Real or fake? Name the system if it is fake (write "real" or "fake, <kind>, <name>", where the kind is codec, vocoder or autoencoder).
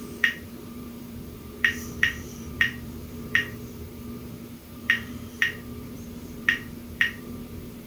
fake, vocoder, BigVGAN v2